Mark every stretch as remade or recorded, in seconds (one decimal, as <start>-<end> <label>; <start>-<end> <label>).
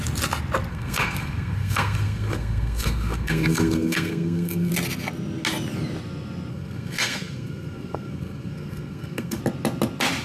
0.0-0.7 recorded; 0.7-4.7 remade; 4.7-6.5 recorded; 6.5-9.4 remade; 9.4-10.2 recorded